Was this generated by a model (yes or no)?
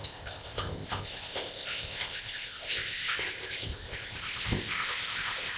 yes